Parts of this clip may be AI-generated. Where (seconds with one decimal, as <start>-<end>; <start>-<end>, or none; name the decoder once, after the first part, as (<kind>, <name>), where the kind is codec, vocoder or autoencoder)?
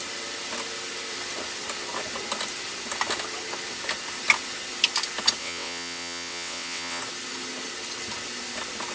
5.4-7.0 (vocoder, WaveNeXt)